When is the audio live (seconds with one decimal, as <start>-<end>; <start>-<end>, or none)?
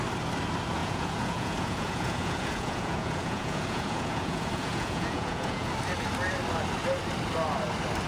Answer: 0.0-0.8; 5.7-8.1